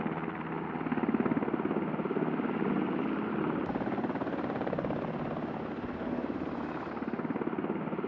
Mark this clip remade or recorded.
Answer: recorded